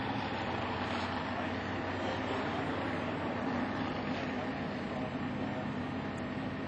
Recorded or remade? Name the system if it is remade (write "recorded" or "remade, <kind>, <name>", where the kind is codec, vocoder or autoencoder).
recorded